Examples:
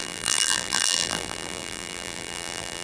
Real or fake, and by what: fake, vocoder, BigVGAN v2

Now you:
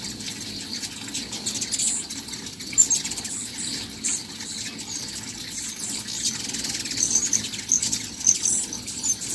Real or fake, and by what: real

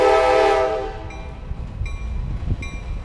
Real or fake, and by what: real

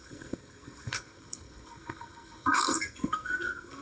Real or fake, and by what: fake, codec, SNAC